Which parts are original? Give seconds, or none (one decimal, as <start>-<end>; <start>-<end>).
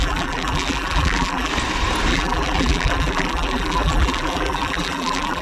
1.5-2.1